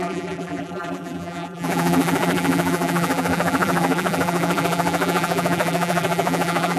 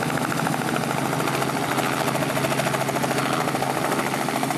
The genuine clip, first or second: second